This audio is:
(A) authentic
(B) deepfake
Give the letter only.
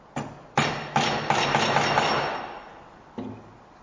A